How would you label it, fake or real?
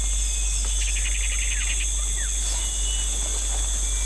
real